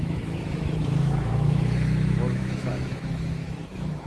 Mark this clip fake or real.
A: fake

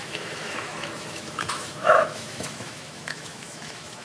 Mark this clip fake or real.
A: fake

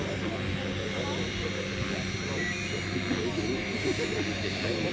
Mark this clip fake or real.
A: real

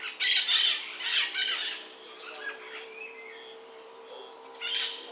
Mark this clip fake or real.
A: real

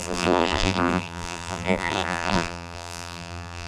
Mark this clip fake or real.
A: fake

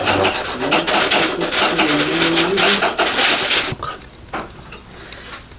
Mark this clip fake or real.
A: real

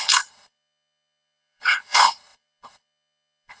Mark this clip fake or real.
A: fake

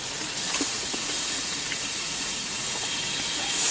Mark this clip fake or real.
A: fake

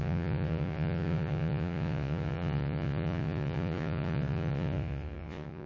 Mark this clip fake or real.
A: fake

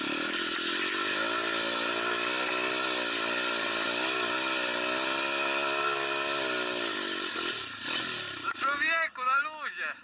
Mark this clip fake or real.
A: real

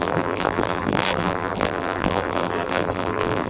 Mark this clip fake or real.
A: fake